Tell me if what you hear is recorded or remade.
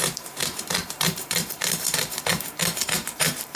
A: remade